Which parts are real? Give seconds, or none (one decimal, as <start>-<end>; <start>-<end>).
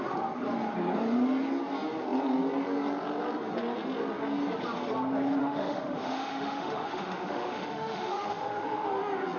0.0-5.4; 8.9-9.4